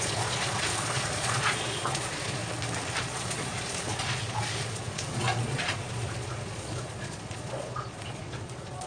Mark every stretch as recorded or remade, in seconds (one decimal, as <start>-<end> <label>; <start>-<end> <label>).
0.0-2.4 remade; 2.4-3.0 recorded; 3.0-8.9 remade